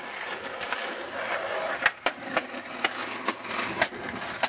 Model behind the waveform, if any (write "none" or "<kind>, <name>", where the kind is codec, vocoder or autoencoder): none